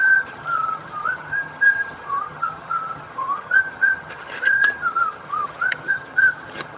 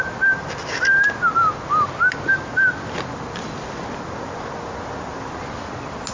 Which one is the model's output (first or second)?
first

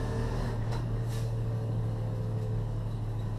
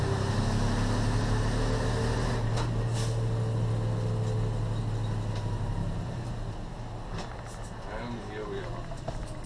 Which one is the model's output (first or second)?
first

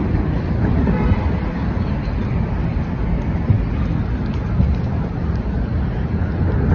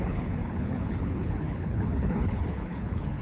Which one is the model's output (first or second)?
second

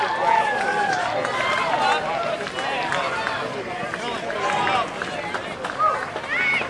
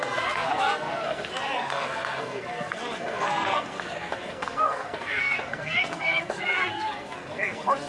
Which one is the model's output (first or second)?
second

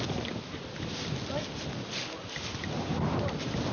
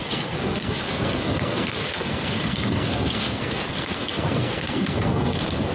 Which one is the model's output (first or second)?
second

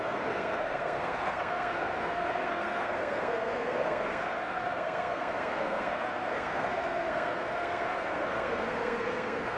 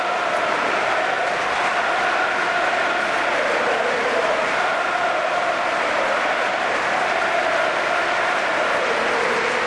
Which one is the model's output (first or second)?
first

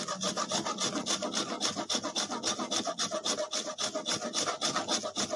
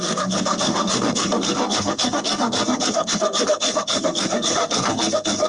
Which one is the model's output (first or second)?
second